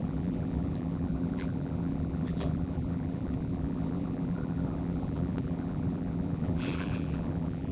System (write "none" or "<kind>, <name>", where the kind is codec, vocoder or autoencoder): vocoder, BigVGAN v2